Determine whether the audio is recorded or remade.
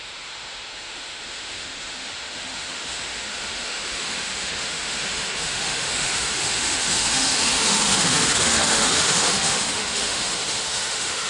remade